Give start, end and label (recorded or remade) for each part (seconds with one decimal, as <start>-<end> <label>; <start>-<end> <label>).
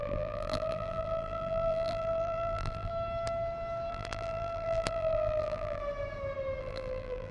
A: 0.0-2.9 remade; 2.9-3.9 recorded; 3.9-5.8 remade; 5.8-6.6 recorded; 6.6-7.3 remade